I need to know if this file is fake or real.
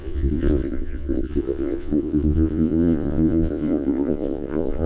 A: fake